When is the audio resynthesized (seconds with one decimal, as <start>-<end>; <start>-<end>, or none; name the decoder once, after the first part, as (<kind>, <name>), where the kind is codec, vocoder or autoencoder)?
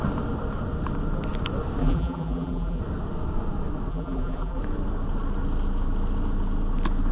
1.8-2.8 (vocoder, BigVGAN v2); 3.9-4.6